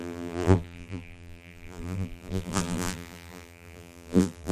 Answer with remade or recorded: remade